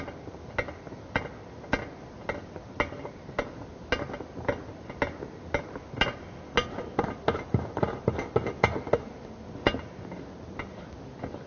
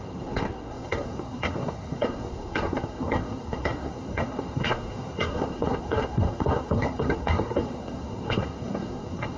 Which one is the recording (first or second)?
first